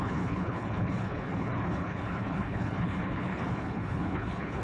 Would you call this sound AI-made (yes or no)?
yes